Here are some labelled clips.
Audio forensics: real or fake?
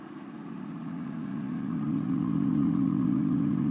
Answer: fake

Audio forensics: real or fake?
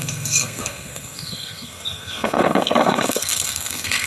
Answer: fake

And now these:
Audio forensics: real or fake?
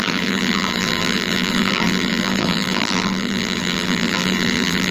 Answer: fake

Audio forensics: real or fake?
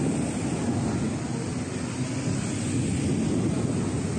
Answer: real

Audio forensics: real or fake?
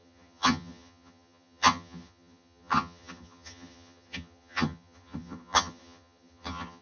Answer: fake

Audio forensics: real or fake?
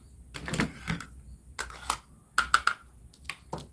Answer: real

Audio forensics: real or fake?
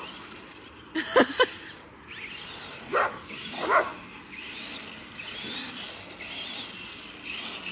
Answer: real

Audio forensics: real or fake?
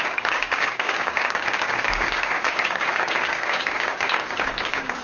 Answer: fake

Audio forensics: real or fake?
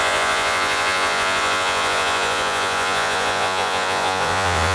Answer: fake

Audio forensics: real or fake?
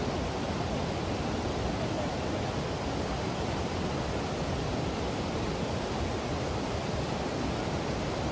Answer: real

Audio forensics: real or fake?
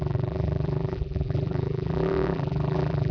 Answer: fake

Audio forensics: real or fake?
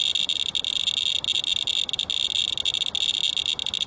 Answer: real